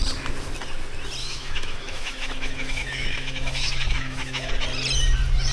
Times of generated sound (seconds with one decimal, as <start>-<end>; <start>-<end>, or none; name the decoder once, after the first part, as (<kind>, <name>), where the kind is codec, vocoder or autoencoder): 1.2-4.5 (autoencoder, DAC-VAE)